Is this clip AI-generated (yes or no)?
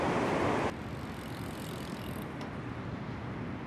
no